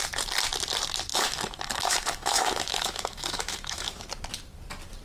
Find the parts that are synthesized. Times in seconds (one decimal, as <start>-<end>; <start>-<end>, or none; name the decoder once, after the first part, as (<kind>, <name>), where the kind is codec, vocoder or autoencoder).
1.1-4.1 (autoencoder, DAC-VAE)